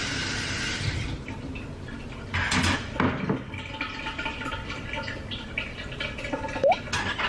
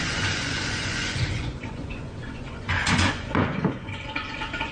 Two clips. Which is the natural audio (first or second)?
first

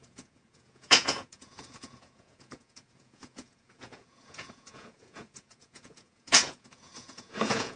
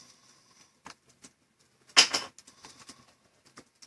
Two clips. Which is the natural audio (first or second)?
second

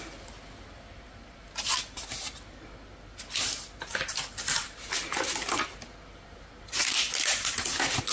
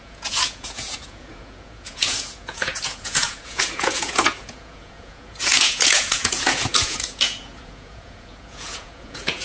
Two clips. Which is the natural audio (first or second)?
first